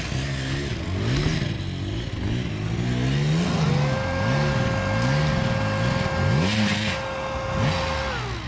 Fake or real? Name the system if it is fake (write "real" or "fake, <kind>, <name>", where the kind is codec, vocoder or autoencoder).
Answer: real